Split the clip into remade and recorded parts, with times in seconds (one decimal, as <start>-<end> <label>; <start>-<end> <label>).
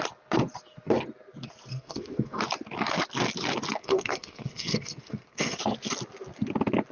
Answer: 0.0-1.7 recorded; 1.7-2.4 remade; 2.4-3.8 recorded; 3.8-5.6 remade; 5.6-6.9 recorded